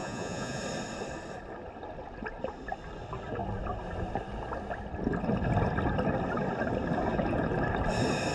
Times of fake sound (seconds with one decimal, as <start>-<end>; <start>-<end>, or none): 0.0-0.6

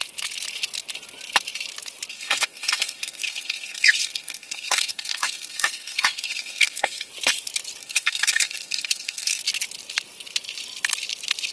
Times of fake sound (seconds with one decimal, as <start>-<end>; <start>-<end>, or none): 2.1-7.1; 7.8-9.4

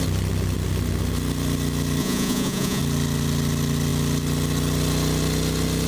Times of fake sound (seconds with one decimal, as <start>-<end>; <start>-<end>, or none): 2.0-2.8

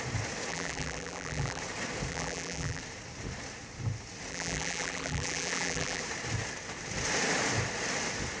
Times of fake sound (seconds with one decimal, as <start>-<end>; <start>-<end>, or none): 0.5-1.6; 2.1-2.8; 4.3-6.0

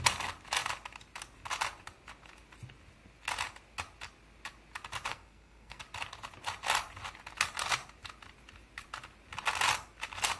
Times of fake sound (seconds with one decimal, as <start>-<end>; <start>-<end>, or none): 5.1-5.8

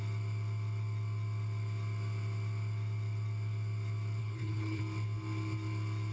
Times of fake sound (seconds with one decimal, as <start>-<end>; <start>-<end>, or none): 4.2-4.8